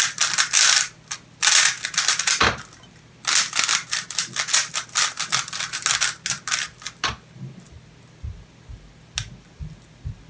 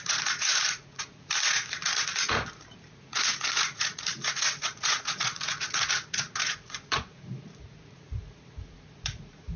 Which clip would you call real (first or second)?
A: first